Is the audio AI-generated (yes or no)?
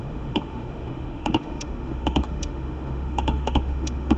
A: yes